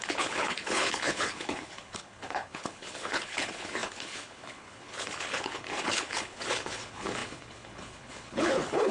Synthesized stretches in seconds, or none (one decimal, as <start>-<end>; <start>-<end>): 0.0-8.9